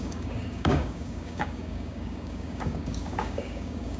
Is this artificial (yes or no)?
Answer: yes